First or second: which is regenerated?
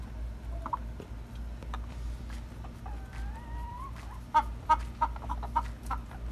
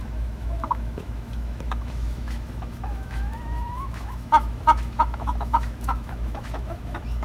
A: second